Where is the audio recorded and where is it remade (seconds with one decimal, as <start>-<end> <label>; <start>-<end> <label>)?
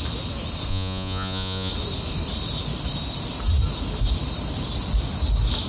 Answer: 0.0-0.7 recorded; 0.7-1.7 remade; 1.7-5.7 recorded